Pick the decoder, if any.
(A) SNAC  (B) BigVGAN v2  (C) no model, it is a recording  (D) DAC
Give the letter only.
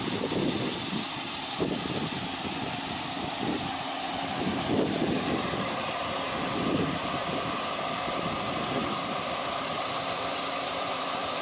B